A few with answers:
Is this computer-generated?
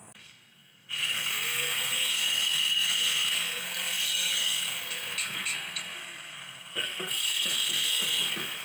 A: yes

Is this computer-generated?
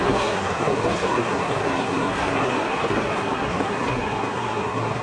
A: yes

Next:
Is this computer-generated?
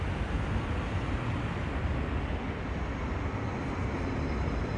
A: no